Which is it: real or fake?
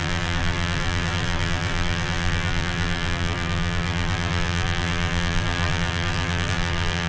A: fake